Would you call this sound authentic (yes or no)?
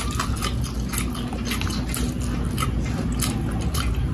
yes